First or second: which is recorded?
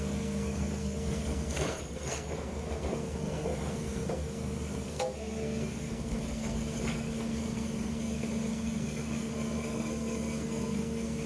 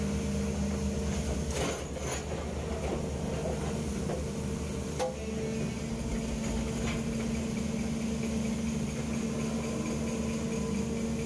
second